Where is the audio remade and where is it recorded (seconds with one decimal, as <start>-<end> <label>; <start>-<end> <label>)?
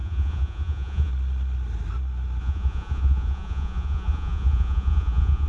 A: 0.0-1.1 remade; 1.1-2.4 recorded; 2.4-5.5 remade